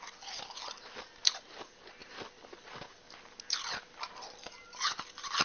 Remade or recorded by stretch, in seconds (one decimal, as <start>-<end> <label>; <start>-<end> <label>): 0.0-5.4 recorded